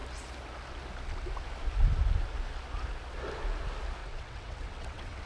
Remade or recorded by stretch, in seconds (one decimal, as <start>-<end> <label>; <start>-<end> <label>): 0.0-4.0 recorded; 4.0-5.3 remade